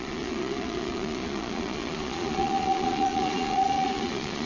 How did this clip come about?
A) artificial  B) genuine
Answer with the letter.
A